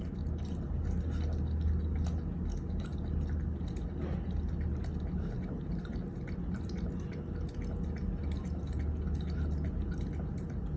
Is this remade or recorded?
recorded